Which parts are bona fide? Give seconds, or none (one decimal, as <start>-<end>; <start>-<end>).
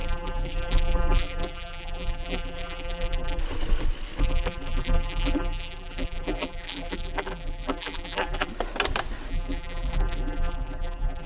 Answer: 3.4-4.2; 8.5-9.3